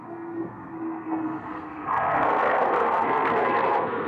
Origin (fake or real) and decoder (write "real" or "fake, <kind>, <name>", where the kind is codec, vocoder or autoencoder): fake, codec, SNAC